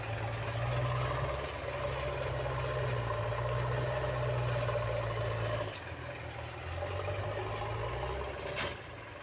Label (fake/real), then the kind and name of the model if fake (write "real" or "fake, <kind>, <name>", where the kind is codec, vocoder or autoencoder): real